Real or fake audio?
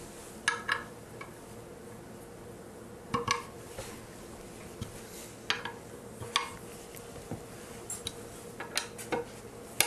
real